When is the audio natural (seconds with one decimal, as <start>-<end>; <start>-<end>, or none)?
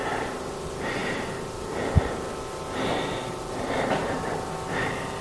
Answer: 0.0-1.0; 4.0-5.2